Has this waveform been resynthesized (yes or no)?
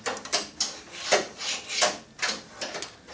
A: no